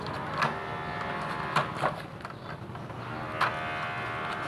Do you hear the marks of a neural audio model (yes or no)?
no